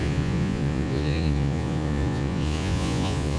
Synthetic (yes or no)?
yes